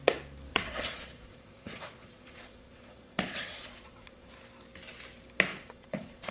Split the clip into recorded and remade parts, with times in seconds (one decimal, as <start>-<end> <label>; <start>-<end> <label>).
0.0-0.5 recorded; 0.5-4.3 remade; 4.3-5.5 recorded; 5.5-6.3 remade